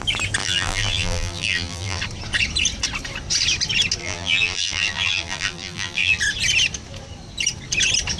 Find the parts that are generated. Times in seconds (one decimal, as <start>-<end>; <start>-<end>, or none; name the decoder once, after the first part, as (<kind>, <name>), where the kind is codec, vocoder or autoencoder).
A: 0.4-2.0 (vocoder, BigVGAN v2); 4.0-6.2